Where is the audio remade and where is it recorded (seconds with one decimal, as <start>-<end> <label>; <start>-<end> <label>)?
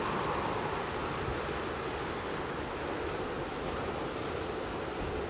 0.0-5.3 recorded